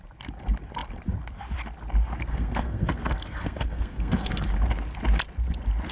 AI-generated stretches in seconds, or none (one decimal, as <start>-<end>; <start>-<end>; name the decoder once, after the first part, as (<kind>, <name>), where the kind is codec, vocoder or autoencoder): 2.3-4.5 (codec, SNAC)

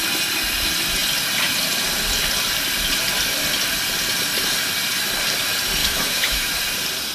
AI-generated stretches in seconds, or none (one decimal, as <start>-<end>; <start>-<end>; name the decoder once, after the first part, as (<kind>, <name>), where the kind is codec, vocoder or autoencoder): 5.8-6.5 (autoencoder, DAC-VAE)

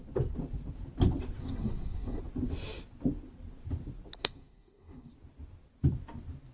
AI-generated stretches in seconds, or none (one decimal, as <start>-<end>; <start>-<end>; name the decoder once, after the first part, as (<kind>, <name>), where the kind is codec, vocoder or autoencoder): 1.4-2.2 (codec, SNAC); 4.2-5.1